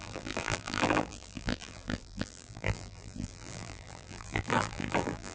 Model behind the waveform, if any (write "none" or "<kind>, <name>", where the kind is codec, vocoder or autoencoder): vocoder, BigVGAN v2